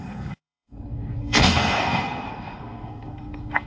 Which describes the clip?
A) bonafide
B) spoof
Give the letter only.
B